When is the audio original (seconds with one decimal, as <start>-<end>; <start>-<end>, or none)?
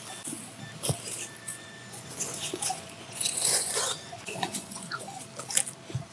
0.0-1.5; 5.2-6.1